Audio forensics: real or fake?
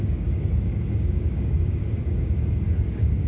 fake